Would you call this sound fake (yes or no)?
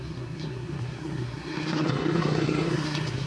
yes